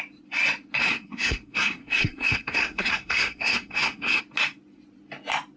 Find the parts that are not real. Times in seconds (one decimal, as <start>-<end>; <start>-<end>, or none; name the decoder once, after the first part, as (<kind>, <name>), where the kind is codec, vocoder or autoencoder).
0.8-4.2 (codec, SNAC)